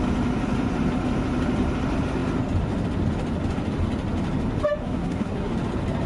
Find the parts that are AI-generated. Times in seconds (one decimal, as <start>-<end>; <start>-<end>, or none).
4.8-5.5